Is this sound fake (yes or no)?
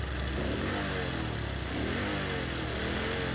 no